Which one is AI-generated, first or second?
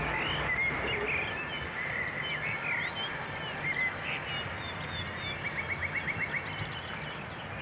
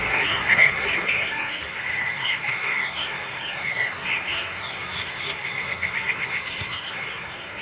second